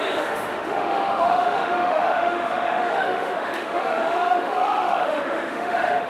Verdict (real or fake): fake